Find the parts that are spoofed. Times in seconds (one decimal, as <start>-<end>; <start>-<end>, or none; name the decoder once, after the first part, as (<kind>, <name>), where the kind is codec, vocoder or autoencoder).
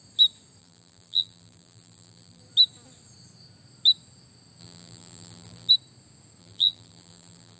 0.6-2.4 (vocoder, BigVGAN v2); 4.6-5.7; 6.4-7.6